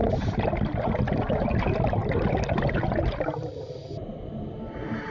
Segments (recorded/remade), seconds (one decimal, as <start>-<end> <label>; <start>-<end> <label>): 0.0-5.1 recorded